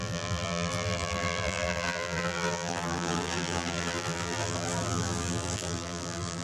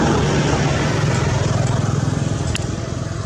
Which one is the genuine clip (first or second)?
second